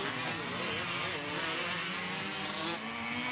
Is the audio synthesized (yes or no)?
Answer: no